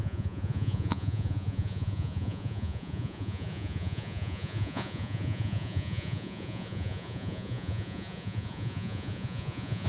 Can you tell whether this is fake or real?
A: fake